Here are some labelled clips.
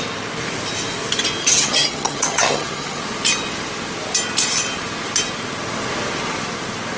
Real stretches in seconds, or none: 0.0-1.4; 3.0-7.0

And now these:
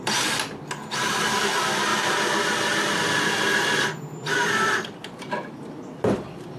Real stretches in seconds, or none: 0.0-6.6

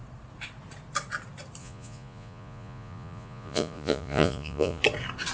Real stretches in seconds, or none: 0.0-1.6; 4.8-5.3

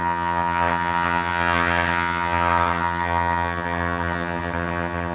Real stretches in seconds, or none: none

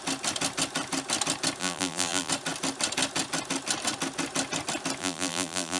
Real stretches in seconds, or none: 0.0-1.6; 2.3-5.0

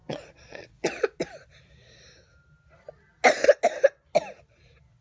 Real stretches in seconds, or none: 1.2-5.0

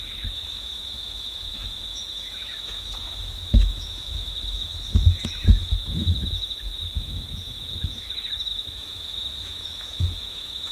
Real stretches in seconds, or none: none

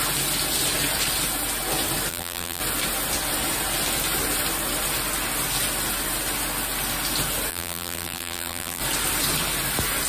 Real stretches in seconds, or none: 0.0-2.1; 2.6-7.5; 8.8-10.1